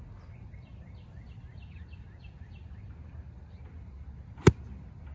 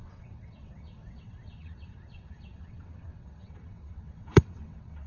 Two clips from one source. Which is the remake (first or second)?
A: second